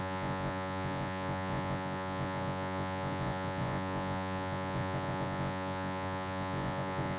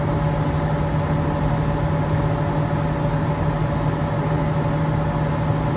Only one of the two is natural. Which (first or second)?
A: second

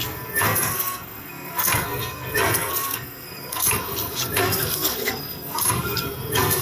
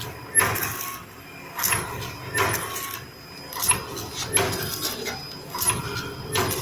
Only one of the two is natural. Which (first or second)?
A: second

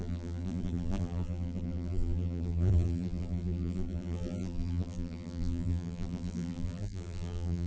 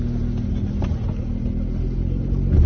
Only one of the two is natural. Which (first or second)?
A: second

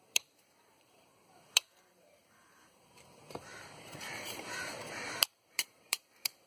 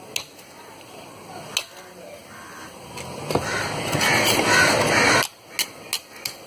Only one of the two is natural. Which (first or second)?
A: second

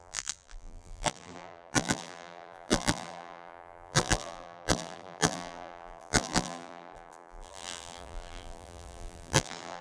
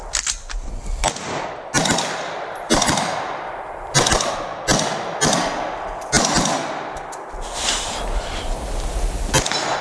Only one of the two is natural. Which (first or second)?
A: second